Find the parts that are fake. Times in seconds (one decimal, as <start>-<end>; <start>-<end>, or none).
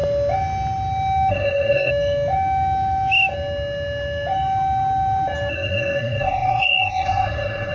1.3-1.9; 5.5-7.7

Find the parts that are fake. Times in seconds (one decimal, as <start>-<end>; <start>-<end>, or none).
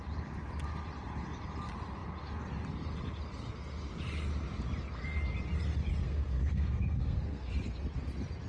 6.0-7.5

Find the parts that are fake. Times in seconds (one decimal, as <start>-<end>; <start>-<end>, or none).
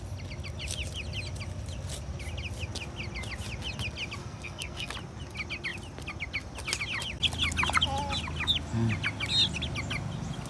4.2-4.9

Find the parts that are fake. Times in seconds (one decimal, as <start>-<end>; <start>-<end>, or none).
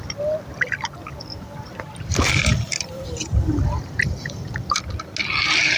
none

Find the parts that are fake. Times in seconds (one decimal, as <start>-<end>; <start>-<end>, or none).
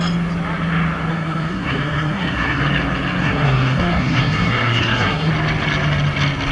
1.1-2.6; 3.2-5.3